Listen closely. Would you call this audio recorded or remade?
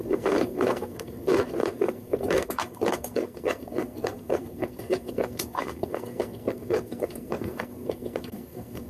remade